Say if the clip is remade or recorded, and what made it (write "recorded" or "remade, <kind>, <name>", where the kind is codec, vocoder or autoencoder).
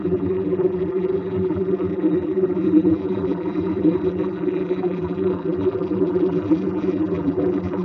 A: remade, vocoder, BigVGAN v2